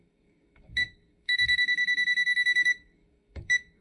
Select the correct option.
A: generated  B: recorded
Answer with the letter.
A